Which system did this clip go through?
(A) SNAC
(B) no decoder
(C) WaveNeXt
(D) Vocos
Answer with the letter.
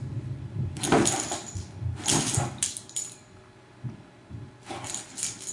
B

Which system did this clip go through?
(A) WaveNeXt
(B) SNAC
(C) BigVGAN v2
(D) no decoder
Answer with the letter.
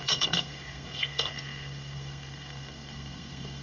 B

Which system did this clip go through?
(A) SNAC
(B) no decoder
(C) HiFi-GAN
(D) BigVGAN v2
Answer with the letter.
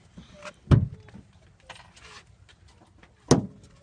B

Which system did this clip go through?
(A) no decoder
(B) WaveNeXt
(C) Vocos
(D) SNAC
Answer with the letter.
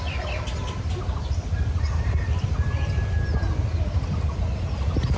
A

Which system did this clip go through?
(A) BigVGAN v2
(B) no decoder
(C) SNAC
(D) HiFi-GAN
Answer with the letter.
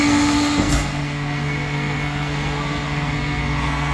C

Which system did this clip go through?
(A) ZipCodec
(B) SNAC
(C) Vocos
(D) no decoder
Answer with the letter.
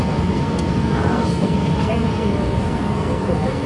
B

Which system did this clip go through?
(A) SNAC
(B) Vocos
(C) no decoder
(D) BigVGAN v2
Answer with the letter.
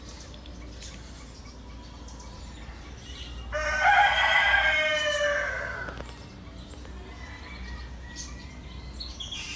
C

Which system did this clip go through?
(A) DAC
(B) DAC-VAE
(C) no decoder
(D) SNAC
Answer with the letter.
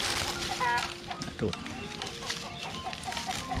C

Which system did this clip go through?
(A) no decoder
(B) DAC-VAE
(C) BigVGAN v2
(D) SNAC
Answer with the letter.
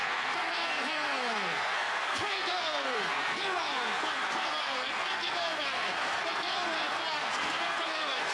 D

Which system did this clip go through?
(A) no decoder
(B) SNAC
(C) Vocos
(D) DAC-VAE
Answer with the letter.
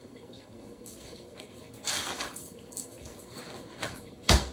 B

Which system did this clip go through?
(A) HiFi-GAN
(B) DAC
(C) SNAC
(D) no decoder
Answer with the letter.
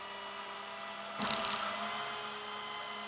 D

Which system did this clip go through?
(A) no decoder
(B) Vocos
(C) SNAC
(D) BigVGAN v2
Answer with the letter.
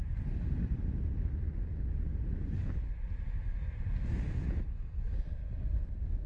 A